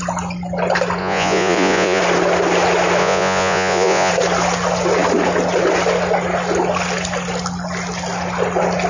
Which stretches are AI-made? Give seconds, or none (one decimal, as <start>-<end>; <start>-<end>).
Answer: 1.0-2.0; 3.0-4.1